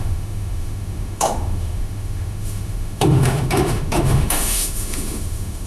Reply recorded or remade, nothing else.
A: remade